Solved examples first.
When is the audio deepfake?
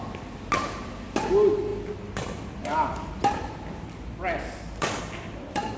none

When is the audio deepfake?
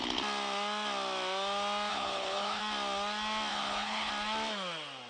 1.9-2.6; 3.5-4.1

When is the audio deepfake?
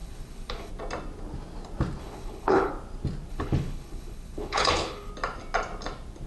0.0-0.7; 2.0-2.7; 3.3-5.1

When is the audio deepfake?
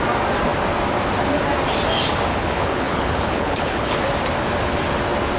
2.3-4.0